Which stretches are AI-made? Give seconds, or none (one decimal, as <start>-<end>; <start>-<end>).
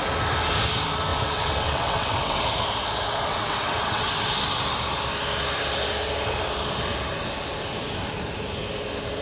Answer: 1.1-2.4; 3.3-4.1